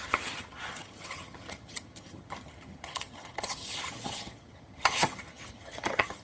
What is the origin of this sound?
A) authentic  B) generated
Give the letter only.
B